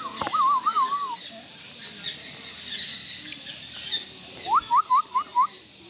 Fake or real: real